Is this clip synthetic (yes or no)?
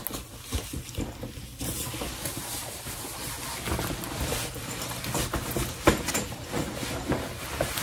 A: no